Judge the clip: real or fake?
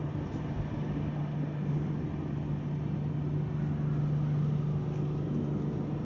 real